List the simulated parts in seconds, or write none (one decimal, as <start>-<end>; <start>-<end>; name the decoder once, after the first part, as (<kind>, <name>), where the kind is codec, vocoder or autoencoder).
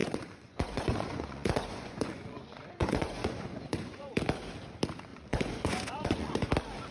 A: 0.0-4.1 (vocoder, Vocos); 5.1-6.5